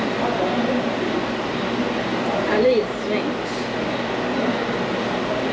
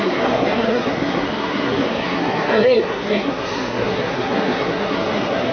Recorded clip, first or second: first